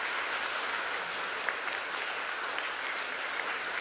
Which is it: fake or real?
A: real